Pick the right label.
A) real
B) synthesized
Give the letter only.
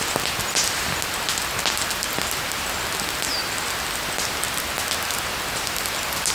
A